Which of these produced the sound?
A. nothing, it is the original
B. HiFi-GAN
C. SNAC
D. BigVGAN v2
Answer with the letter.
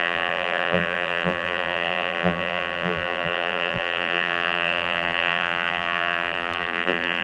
D